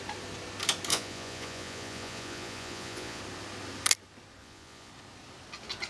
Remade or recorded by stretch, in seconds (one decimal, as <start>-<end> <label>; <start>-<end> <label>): 0.0-0.9 recorded; 0.9-3.2 remade; 3.2-4.4 recorded; 4.4-4.9 remade; 4.9-5.9 recorded